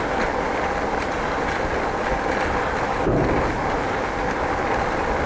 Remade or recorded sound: recorded